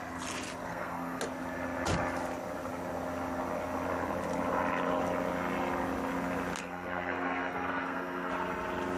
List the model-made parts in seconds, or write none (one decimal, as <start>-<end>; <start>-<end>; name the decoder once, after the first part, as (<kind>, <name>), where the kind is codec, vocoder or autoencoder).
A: 0.7-1.2 (codec, SNAC); 6.6-8.3